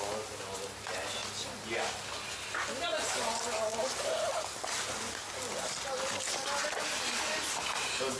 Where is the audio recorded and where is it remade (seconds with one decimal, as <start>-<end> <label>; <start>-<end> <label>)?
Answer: 0.0-8.2 recorded